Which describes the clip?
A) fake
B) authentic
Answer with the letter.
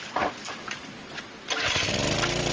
B